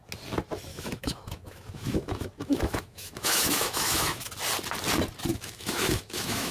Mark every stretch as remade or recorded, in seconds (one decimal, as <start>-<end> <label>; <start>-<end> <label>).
0.0-0.7 recorded; 0.7-4.3 remade; 4.3-5.3 recorded; 5.3-6.5 remade